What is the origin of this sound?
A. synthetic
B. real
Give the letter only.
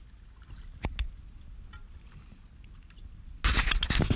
B